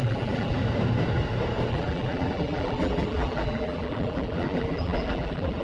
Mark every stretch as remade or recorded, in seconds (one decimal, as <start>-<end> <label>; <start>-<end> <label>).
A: 0.0-0.6 remade; 0.6-1.7 recorded; 1.7-5.6 remade